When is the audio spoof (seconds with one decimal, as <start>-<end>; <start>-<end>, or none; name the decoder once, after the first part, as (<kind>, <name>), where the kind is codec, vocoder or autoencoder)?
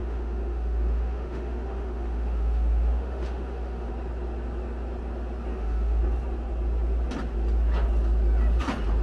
0.0-3.9 (autoencoder, DAC-VAE); 5.5-6.0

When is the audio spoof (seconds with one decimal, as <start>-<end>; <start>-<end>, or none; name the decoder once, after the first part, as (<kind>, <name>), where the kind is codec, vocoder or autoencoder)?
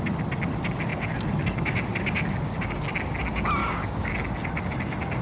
3.6-4.1 (codec, DAC)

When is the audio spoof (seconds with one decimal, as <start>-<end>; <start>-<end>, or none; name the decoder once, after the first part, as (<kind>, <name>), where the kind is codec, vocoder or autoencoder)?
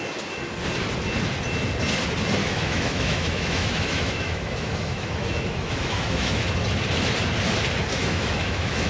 2.4-6.5 (autoencoder, DAC-VAE); 7.9-8.9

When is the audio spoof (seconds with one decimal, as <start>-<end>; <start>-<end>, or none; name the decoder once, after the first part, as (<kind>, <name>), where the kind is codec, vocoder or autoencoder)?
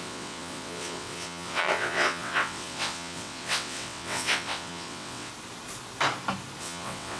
0.0-5.3 (vocoder, WaveNeXt); 6.6-7.2